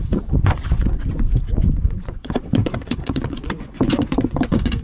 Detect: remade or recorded remade